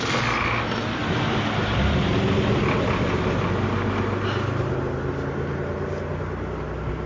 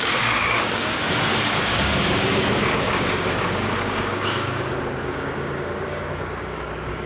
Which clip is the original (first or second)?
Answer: first